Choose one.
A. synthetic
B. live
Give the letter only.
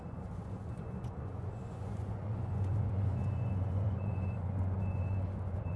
A